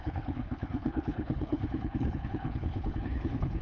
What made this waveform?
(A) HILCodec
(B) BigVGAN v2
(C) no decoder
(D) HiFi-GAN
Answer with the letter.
A